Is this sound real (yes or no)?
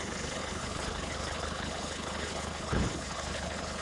no